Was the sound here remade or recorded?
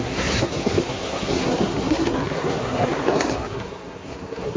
remade